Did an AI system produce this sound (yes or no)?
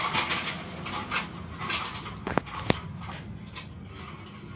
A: no